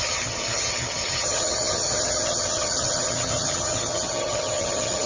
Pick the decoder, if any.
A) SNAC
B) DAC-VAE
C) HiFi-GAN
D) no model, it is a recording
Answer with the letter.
C